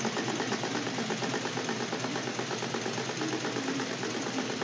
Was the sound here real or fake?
real